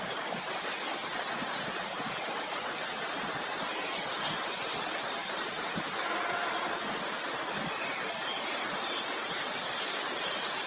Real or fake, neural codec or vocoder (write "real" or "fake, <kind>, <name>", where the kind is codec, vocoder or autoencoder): real